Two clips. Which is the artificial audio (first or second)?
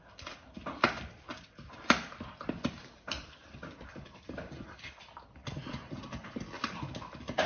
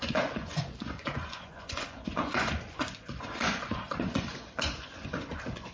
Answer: second